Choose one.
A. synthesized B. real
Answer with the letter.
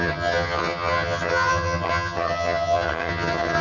A